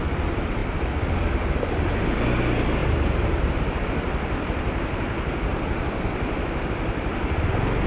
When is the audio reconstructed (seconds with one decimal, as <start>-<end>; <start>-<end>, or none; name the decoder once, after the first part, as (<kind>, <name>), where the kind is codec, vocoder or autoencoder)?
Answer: 0.6-1.1 (vocoder, BigVGAN v2)